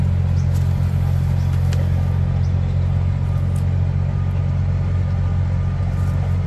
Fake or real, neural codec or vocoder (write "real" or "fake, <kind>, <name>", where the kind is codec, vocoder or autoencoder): real